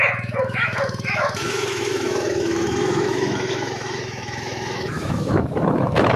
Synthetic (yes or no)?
yes